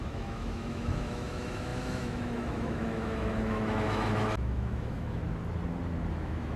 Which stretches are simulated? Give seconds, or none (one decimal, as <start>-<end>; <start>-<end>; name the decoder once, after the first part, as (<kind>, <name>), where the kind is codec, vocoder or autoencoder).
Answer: 0.0-5.2 (autoencoder, DAC-VAE); 6.1-6.6